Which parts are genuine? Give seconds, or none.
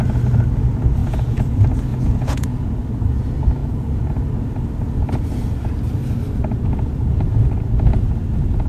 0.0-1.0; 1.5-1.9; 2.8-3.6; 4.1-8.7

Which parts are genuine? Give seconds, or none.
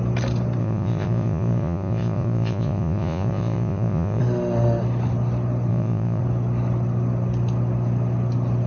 0.0-0.6; 4.2-5.7; 6.2-8.7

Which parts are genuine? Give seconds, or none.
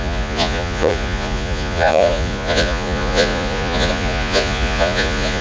none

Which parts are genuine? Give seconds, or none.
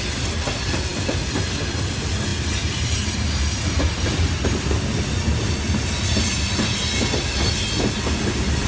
0.0-8.7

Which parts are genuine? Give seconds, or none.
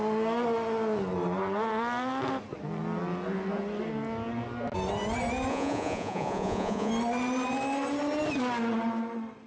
0.0-5.5; 6.9-9.5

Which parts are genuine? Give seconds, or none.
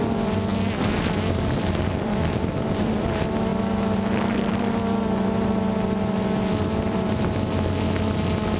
0.0-8.6